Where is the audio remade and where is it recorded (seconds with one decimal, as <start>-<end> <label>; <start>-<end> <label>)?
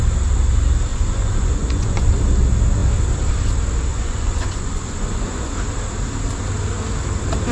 0.0-0.9 recorded; 0.9-2.1 remade; 2.1-3.9 recorded; 3.9-5.5 remade; 5.5-7.5 recorded